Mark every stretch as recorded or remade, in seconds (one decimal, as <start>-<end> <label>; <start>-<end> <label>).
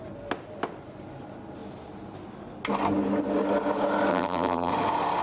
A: 0.0-4.1 recorded; 4.1-4.7 remade; 4.7-5.2 recorded